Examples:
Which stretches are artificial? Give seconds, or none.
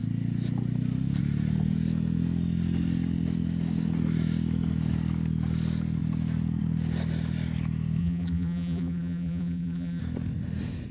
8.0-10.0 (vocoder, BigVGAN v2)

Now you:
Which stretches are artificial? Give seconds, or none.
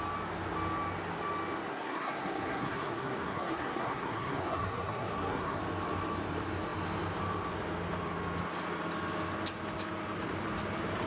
1.7-5.6 (codec, SNAC)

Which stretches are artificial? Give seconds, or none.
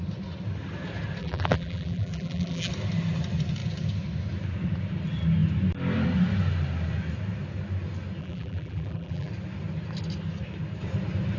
1.2-2.7 (vocoder, BigVGAN v2); 8.2-9.3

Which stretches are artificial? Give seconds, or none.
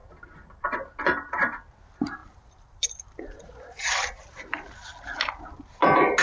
2.2-4.1 (vocoder, BigVGAN v2)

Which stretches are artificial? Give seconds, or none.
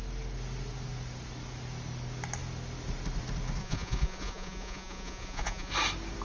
3.6-5.7 (vocoder, Vocos)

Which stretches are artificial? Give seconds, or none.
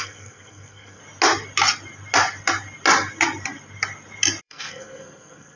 0.0-1.0 (codec, SNAC); 4.4-5.6